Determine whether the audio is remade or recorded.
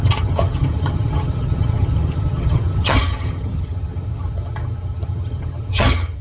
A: remade